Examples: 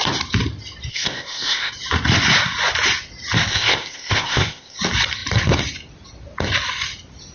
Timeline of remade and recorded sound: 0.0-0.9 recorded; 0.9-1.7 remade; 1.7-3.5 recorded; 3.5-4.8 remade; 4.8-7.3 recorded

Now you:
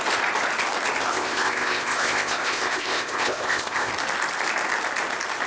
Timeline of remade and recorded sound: 0.0-1.1 recorded; 1.1-3.9 remade; 3.9-5.5 recorded

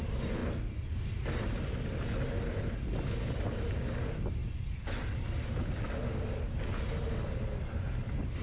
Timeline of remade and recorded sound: 0.0-8.4 recorded

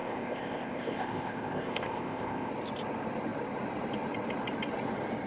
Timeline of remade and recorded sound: 0.0-2.5 remade; 2.5-5.3 recorded